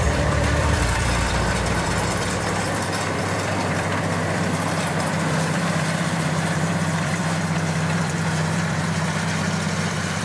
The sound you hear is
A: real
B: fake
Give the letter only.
B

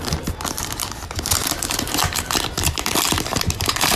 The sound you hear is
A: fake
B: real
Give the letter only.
A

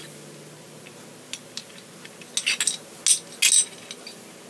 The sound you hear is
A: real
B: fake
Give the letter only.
A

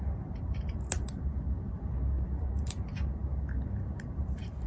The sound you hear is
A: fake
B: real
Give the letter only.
A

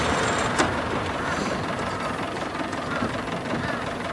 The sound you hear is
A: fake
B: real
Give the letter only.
A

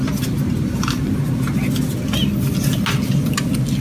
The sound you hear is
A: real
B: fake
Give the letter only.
A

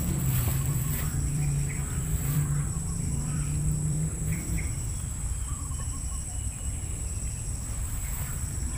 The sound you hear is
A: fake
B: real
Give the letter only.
A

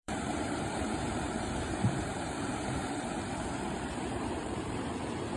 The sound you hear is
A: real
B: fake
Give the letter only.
B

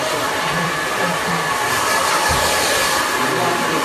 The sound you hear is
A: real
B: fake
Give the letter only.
B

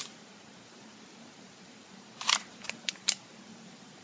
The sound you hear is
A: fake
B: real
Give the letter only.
A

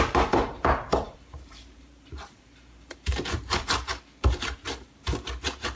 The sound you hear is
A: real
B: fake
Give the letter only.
B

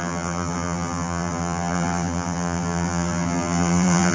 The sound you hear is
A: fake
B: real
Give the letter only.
A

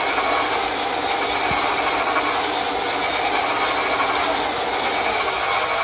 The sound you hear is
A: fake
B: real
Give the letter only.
B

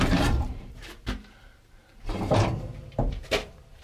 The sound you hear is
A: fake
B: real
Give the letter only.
A